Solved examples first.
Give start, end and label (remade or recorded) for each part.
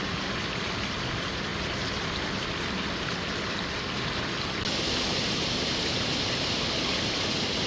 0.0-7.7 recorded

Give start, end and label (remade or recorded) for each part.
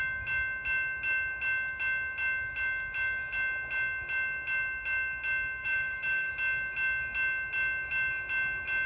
0.0-5.6 recorded; 5.6-6.3 remade; 6.3-8.9 recorded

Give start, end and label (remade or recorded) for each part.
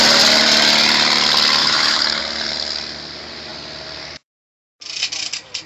0.0-1.6 recorded; 1.6-2.2 remade; 2.2-5.7 recorded